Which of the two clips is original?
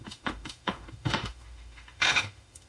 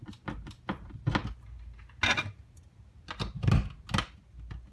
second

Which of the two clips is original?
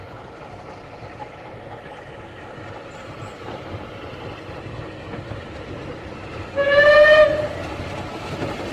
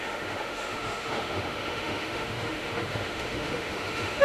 first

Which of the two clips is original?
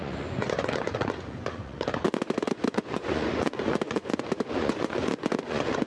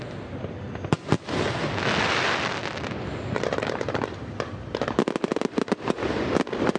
second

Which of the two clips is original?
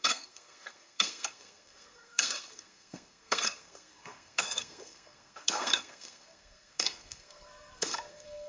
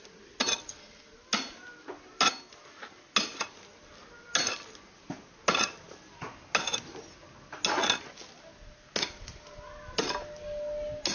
second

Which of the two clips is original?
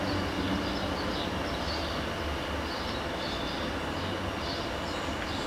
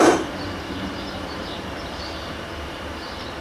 first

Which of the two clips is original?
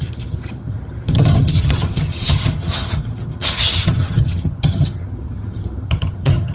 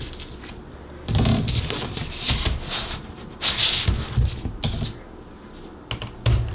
second